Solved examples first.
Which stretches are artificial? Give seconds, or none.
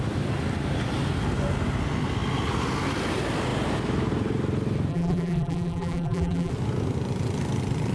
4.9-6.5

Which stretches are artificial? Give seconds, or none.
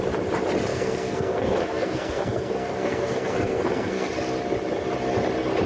0.7-4.1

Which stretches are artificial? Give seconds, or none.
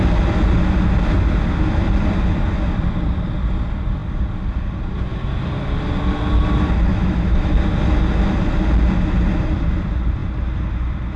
6.9-7.5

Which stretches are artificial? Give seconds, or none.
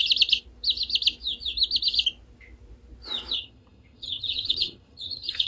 3.3-5.5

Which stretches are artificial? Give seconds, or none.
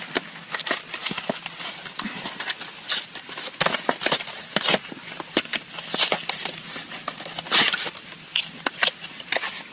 none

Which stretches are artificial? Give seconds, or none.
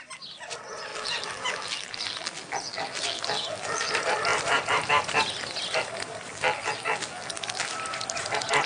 0.9-3.9; 6.3-7.7